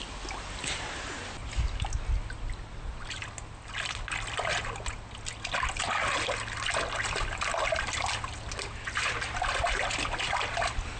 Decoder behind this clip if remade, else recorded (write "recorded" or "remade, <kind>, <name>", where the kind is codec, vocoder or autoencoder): recorded